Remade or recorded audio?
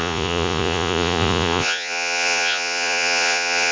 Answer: remade